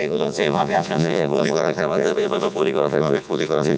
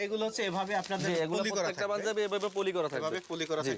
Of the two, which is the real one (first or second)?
second